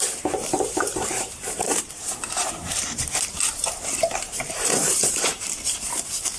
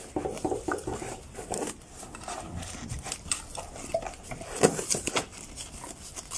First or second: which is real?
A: second